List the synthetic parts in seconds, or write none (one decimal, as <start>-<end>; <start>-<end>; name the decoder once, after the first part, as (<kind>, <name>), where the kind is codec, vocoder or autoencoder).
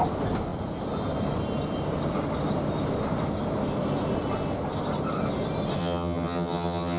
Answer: 5.8-7.0 (vocoder, HiFi-GAN)